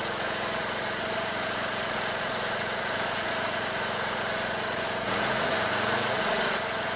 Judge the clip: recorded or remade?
remade